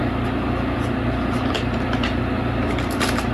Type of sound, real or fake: real